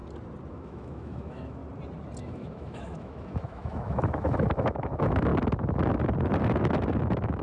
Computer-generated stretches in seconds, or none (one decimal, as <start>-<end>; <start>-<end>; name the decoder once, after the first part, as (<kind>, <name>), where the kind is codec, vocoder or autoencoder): 0.5-1.6 (autoencoder, DAC-VAE); 2.2-5.3; 7.0-7.4